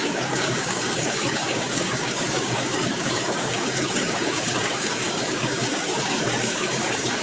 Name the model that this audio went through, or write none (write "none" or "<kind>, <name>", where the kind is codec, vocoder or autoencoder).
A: codec, DAC